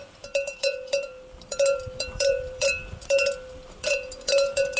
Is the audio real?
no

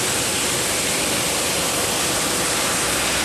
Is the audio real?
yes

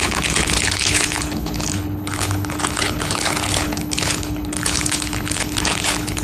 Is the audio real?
no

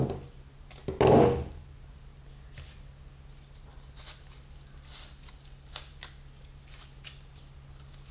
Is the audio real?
yes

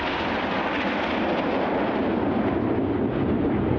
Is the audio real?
yes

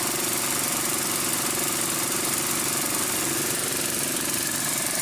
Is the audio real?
yes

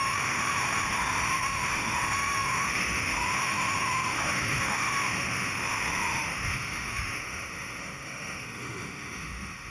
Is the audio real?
no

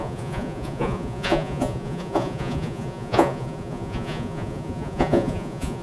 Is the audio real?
no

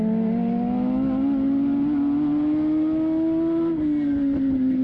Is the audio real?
yes